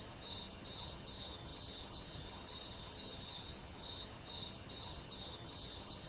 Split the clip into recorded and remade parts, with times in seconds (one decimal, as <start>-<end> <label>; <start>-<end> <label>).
0.0-6.1 remade